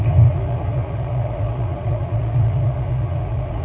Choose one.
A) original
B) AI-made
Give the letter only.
B